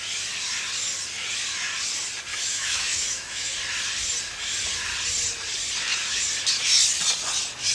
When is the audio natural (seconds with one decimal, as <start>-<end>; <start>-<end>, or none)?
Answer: 0.0-2.3; 3.5-7.7